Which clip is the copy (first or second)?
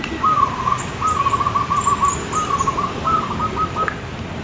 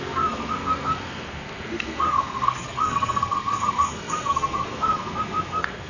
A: second